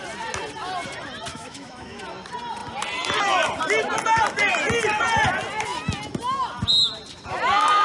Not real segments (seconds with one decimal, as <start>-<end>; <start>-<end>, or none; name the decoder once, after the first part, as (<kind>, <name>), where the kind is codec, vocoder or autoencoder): 1.3-2.0 (autoencoder, DAC-VAE)